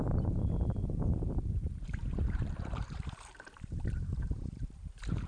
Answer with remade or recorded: remade